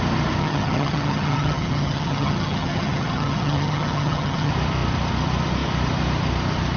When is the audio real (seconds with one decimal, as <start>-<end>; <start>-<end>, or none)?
0.0-0.4; 4.5-6.8